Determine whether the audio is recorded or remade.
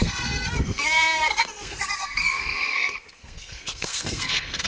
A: remade